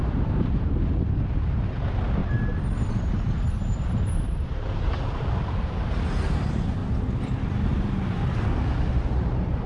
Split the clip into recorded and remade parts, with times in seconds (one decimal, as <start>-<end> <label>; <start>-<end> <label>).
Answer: 0.0-2.2 remade; 2.2-3.0 recorded; 3.0-6.8 remade; 6.8-8.9 recorded; 8.9-9.7 remade

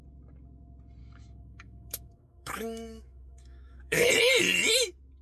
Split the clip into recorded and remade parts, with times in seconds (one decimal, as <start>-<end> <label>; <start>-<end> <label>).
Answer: 0.0-1.0 recorded; 1.0-4.1 remade; 4.1-5.2 recorded

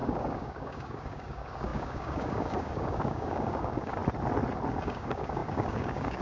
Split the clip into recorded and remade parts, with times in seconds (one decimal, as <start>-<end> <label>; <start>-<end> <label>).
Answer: 0.0-4.0 remade; 4.0-4.7 recorded; 4.7-6.2 remade

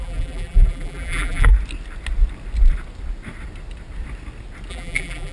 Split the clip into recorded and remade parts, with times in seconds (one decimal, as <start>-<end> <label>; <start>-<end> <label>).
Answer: 0.0-1.5 remade; 1.5-4.7 recorded; 4.7-5.3 remade